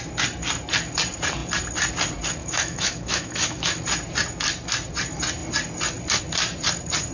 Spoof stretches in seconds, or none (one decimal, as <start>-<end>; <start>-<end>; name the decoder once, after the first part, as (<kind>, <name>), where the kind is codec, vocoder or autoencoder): 2.4-3.8 (autoencoder, DAC-VAE)